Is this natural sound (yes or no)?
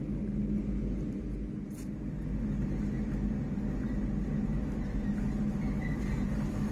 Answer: yes